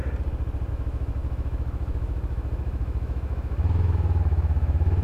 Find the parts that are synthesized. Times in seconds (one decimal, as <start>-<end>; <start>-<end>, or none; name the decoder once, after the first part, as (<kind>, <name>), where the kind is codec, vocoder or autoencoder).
0.7-5.0 (autoencoder, DAC-VAE)